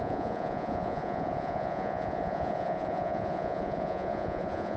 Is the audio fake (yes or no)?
yes